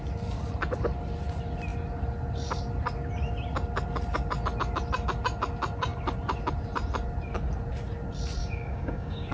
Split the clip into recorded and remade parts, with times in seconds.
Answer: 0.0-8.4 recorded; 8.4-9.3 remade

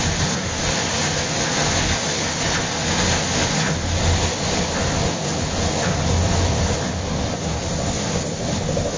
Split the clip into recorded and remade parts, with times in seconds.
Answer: 0.0-9.0 recorded

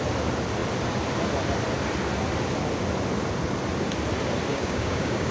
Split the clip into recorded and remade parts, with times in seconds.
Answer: 0.0-4.5 recorded; 4.5-5.3 remade

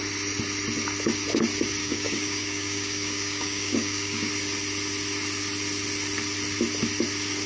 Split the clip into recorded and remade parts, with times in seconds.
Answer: 0.0-1.8 recorded; 1.8-4.3 remade; 4.3-7.5 recorded